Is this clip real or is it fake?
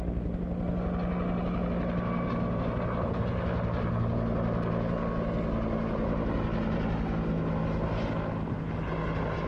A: real